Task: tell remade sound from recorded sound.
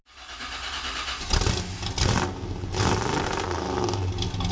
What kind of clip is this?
recorded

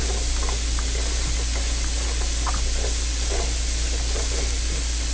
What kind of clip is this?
recorded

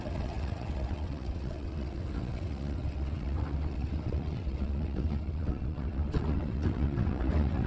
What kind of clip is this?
remade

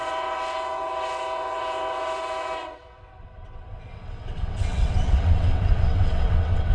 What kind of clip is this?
remade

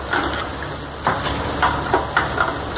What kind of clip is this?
recorded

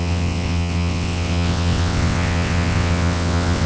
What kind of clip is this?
remade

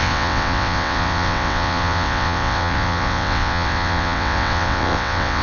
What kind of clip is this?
remade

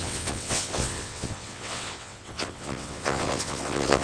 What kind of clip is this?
remade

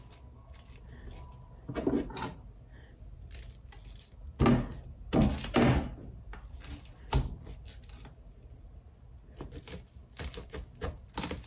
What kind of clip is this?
recorded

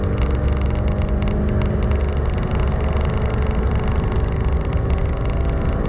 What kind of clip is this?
recorded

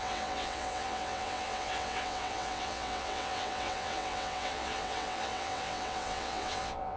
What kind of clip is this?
remade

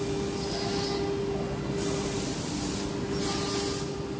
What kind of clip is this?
recorded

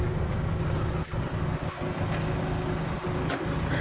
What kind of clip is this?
recorded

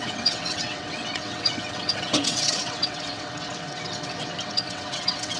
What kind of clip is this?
remade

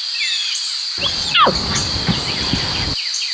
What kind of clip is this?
recorded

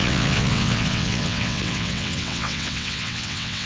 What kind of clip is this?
remade